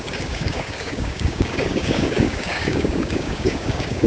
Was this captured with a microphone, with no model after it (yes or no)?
no